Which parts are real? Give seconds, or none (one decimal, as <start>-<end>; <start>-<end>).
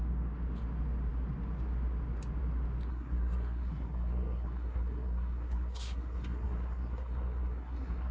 0.0-2.9